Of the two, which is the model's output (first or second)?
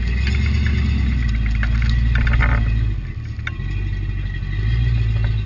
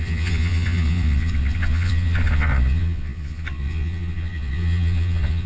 second